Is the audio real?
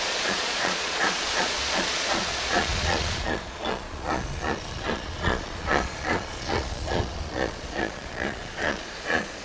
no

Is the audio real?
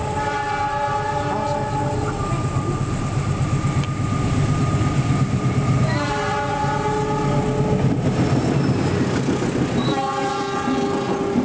yes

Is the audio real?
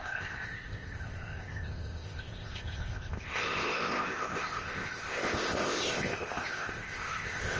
no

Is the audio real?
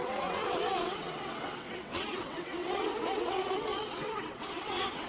no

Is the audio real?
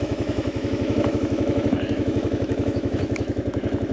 no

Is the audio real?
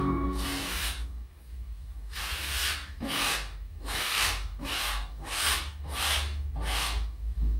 no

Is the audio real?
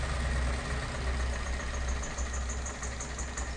yes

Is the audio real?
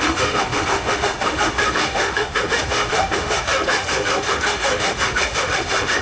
no